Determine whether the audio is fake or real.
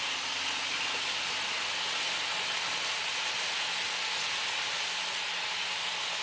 real